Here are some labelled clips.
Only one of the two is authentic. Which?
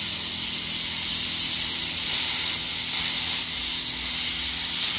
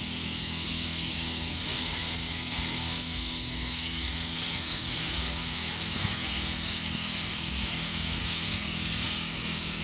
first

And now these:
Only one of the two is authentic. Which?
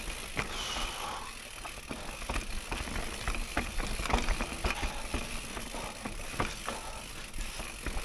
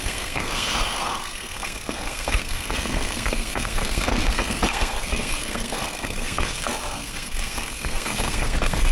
first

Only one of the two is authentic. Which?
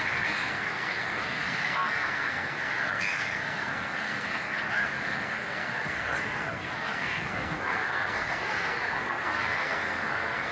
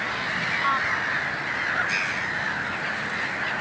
second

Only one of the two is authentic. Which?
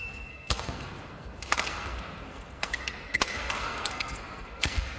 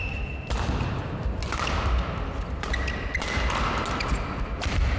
second